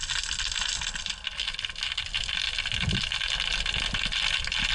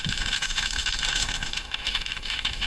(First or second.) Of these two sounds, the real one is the first